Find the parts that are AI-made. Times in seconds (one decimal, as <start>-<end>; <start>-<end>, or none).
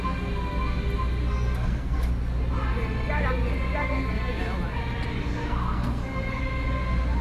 1.2-2.1; 3.8-4.4; 5.4-6.4